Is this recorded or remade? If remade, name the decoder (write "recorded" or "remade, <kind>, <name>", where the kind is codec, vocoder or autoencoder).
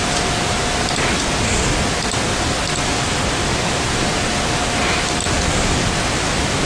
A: recorded